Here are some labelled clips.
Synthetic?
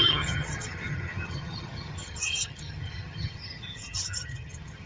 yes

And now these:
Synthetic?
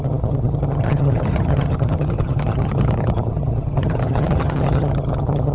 yes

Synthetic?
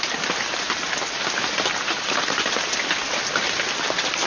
no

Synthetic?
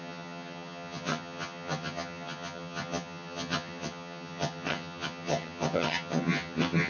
yes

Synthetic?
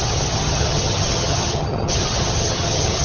yes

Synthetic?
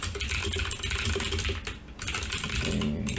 no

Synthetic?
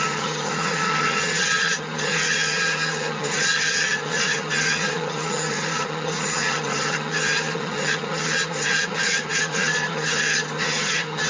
yes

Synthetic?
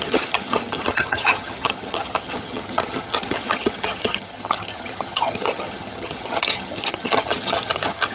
yes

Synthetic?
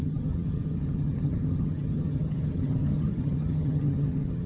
yes